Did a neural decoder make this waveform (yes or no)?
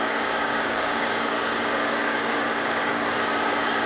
yes